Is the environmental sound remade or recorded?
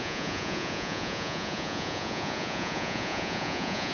remade